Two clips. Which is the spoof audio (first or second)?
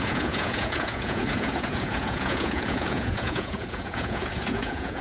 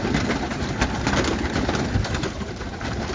first